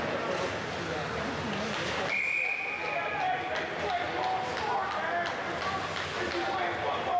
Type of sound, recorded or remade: recorded